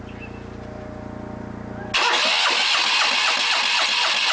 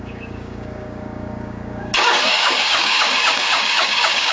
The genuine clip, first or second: first